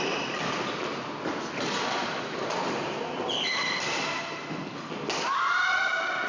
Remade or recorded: recorded